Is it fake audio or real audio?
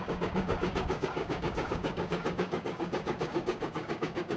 fake